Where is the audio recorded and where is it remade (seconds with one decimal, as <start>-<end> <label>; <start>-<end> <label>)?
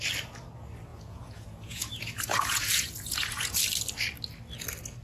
0.0-0.9 recorded; 0.9-3.5 remade; 3.5-5.0 recorded